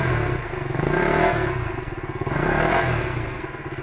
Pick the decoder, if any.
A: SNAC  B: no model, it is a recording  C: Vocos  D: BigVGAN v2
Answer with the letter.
A